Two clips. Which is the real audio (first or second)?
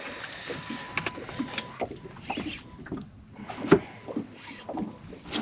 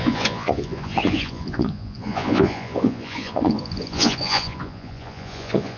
first